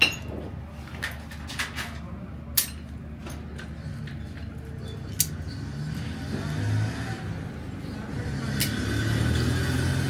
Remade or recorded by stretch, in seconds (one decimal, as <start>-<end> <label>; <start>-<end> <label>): 0.0-10.1 recorded